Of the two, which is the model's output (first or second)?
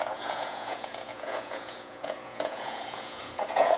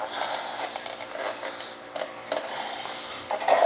first